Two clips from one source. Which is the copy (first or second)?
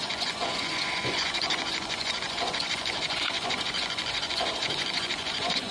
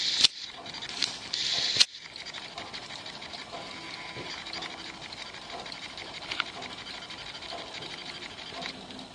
first